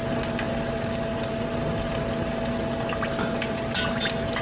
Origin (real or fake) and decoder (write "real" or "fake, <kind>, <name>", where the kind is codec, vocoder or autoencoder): real